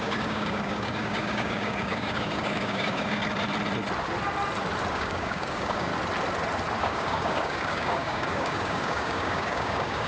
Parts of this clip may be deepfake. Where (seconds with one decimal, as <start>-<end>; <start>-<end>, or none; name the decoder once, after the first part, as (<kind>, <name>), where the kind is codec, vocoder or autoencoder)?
0.0-3.2 (codec, DAC); 4.9-5.9; 6.8-10.1